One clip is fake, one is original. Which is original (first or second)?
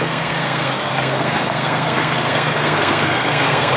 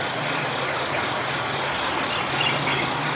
second